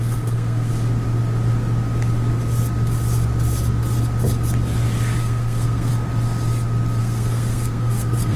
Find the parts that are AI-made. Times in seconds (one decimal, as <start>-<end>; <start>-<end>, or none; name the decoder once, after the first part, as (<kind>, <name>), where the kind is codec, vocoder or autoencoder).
0.0-0.7 (codec, SNAC); 5.2-5.9; 7.0-8.4